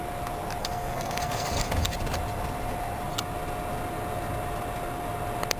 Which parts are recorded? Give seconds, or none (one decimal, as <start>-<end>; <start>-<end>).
0.0-0.6; 1.7-5.6